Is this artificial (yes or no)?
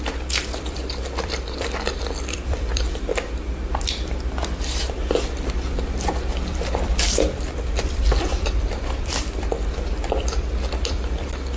yes